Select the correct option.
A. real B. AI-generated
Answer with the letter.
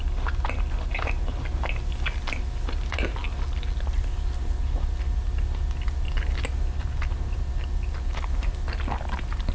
A